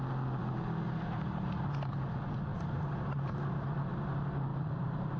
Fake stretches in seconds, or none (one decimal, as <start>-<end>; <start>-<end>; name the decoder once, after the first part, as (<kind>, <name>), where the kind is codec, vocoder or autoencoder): 2.5-3.5 (vocoder, BigVGAN v2); 4.5-5.2